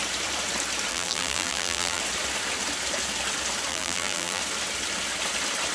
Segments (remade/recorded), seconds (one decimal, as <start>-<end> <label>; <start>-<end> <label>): 0.0-0.9 recorded; 0.9-2.0 remade; 2.0-3.7 recorded; 3.7-4.4 remade; 4.4-5.7 recorded